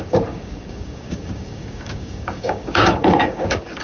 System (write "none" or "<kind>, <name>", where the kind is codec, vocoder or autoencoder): codec, DAC